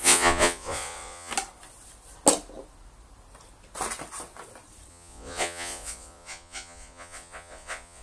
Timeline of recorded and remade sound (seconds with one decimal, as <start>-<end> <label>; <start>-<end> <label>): 0.0-1.3 remade; 1.3-4.9 recorded; 4.9-8.0 remade